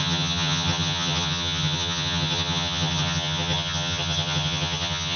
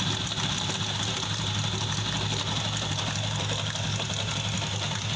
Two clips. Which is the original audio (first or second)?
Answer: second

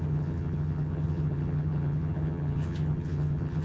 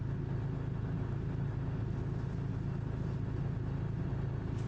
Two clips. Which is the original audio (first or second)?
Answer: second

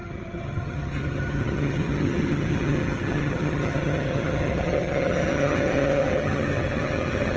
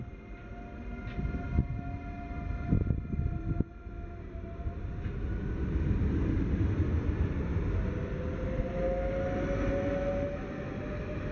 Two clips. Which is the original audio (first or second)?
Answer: second